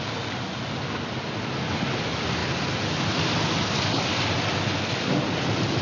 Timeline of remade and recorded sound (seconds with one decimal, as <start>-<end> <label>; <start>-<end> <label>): 0.0-5.8 recorded